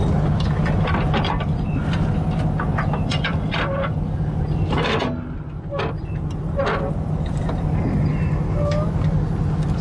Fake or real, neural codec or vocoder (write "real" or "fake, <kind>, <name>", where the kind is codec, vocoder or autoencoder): real